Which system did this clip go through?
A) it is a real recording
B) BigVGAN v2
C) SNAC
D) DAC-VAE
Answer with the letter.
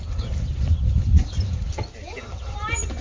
A